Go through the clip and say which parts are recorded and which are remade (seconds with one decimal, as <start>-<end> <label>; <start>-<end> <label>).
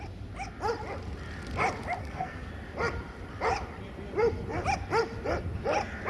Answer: 0.0-2.0 recorded; 2.0-2.5 remade; 2.5-6.1 recorded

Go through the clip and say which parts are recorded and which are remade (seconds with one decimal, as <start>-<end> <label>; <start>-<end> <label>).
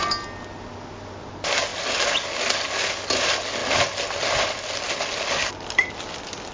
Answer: 0.0-6.5 recorded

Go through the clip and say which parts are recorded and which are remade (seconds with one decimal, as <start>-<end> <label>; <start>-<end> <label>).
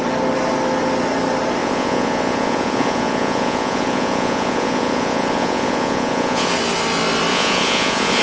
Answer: 0.0-1.6 recorded; 1.6-6.5 remade; 6.5-7.3 recorded; 7.3-8.2 remade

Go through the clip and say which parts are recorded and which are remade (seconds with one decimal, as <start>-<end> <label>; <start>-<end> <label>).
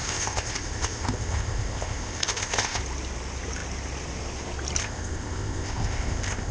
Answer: 0.0-2.8 remade; 2.8-4.8 recorded; 4.8-6.5 remade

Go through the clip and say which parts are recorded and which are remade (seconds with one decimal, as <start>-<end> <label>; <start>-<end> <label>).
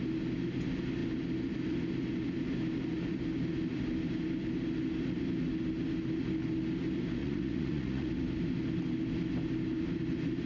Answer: 0.0-7.2 recorded; 7.2-8.1 remade; 8.1-10.5 recorded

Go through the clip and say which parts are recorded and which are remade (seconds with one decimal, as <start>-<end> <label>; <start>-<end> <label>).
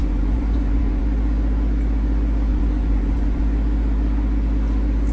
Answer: 0.0-1.0 remade; 1.0-2.5 recorded; 2.5-3.4 remade; 3.4-5.1 recorded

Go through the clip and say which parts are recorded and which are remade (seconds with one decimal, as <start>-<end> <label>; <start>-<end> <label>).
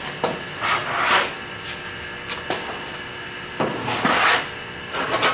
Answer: 0.0-5.3 recorded